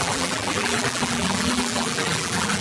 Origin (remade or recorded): remade